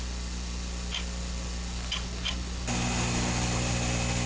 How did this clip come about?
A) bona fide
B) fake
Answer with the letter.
A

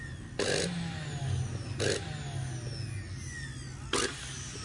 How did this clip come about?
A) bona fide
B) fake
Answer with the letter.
A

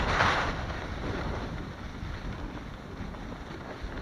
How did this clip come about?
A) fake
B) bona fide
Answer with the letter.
B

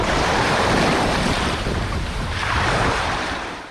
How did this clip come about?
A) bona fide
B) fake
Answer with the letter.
B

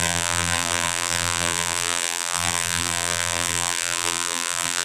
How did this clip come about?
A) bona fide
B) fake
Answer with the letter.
B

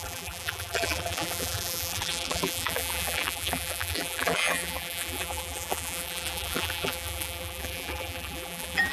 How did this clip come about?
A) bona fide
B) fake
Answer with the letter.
B